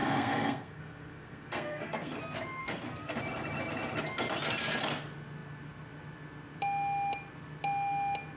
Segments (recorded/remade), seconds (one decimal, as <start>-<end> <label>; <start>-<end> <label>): 0.0-2.2 remade; 2.2-2.6 recorded; 2.6-3.2 remade; 3.2-8.4 recorded